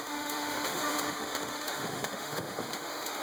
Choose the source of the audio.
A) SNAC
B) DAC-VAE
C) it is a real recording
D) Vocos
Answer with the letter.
B